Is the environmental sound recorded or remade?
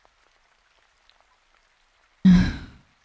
recorded